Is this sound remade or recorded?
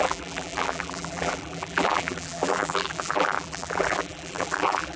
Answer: remade